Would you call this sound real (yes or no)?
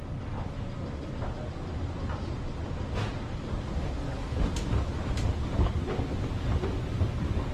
yes